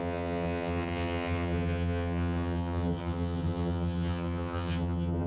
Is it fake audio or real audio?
fake